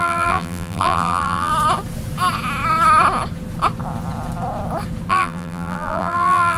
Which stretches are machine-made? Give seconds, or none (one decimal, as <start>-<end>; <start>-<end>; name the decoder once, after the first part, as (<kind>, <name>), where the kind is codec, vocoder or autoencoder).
0.0-1.5 (vocoder, BigVGAN v2); 5.1-6.6